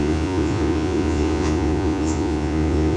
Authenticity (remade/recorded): remade